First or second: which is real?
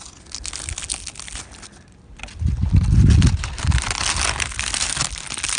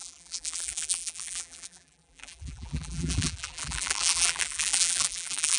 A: first